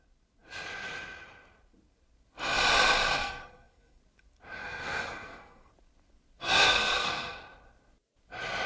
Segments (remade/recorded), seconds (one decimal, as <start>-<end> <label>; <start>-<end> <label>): 0.0-3.2 recorded; 3.2-4.0 remade; 4.0-4.6 recorded; 4.6-5.7 remade; 5.7-6.4 recorded; 6.4-7.4 remade; 7.4-8.7 recorded